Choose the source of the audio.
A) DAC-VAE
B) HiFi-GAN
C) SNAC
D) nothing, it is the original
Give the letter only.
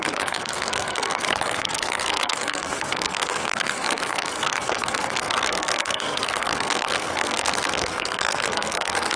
C